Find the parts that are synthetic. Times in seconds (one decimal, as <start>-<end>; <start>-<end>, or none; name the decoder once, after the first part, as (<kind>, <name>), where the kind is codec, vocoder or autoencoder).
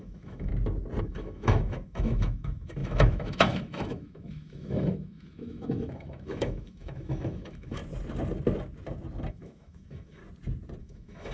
0.0-0.5 (autoencoder, DAC-VAE); 1.0-7.8; 9.3-10.2; 10.8-11.3